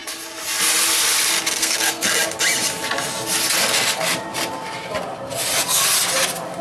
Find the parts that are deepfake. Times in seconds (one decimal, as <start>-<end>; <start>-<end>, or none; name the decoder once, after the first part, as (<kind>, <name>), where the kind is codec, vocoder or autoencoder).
1.6-2.1 (codec, SNAC)